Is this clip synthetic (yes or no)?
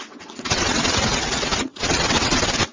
yes